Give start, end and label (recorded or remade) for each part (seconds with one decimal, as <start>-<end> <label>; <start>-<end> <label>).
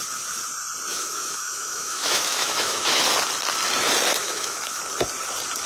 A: 0.0-0.9 recorded; 0.9-3.0 remade; 3.0-4.2 recorded; 4.2-4.8 remade; 4.8-5.7 recorded